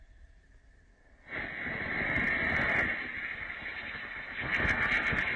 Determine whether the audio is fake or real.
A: real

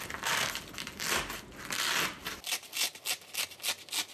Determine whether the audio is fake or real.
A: real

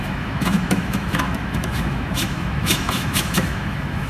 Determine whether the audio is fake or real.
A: fake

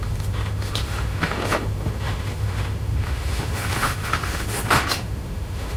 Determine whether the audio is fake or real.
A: fake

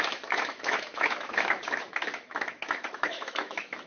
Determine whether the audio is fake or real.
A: fake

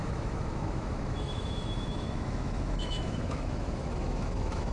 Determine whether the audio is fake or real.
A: fake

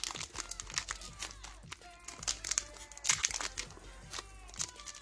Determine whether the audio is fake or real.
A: real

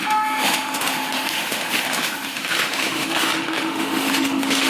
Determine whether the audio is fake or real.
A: fake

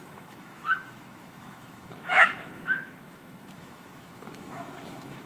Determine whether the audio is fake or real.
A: fake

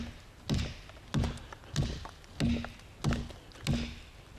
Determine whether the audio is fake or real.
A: real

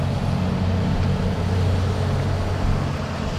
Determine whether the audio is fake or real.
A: real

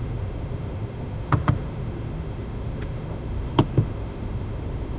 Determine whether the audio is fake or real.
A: fake